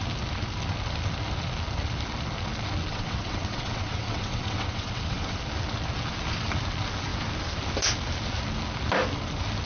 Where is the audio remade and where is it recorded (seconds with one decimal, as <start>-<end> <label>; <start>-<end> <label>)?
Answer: 0.0-2.9 recorded; 2.9-5.4 remade; 5.4-9.7 recorded